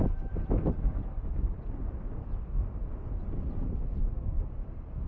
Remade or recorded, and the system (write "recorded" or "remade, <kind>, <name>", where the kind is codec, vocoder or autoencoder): recorded